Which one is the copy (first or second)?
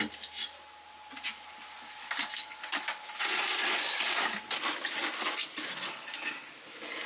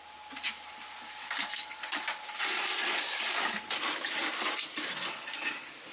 second